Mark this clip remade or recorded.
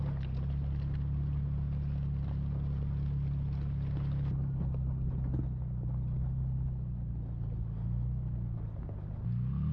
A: recorded